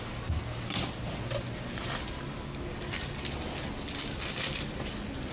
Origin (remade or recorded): recorded